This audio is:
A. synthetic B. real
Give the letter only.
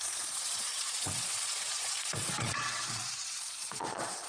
A